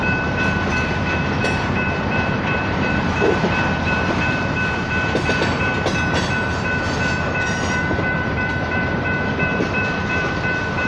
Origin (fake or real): fake